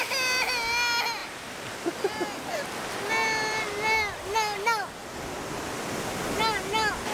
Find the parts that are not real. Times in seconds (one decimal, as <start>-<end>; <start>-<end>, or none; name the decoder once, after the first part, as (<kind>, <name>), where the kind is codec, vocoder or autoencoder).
none